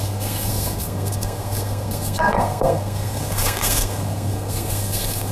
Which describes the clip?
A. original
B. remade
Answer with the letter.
B